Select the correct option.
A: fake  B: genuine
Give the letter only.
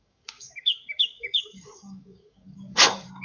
A